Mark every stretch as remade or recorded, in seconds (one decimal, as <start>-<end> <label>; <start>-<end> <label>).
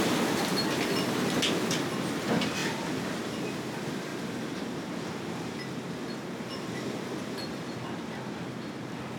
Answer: 0.0-2.6 recorded; 2.6-3.3 remade; 3.3-4.1 recorded; 4.1-8.2 remade; 8.2-9.2 recorded